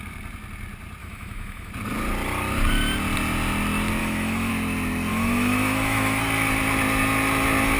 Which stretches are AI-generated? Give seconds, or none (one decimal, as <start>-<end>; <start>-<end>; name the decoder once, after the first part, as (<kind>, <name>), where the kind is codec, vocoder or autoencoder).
1.0-1.7 (autoencoder, DAC-VAE); 4.0-4.5; 5.1-6.2